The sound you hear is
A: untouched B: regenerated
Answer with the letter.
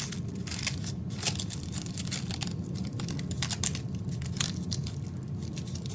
A